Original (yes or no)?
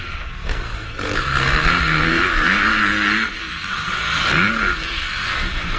no